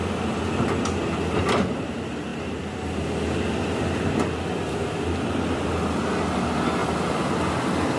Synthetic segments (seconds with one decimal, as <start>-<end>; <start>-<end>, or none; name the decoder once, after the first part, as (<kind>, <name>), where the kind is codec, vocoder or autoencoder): 2.3-4.8 (vocoder, BigVGAN v2); 6.8-7.6